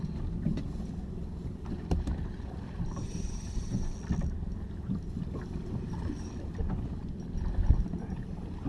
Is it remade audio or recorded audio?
recorded